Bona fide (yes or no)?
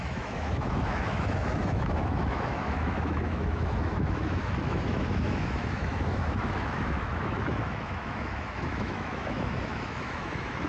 no